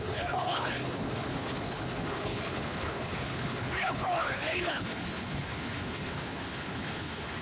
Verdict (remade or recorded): remade